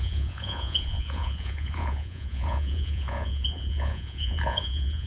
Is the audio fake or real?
fake